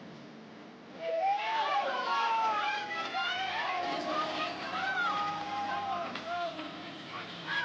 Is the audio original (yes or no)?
yes